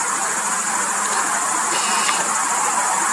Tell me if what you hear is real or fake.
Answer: real